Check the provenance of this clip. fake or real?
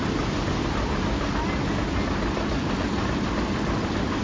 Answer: real